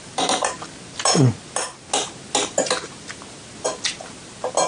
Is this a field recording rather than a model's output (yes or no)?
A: yes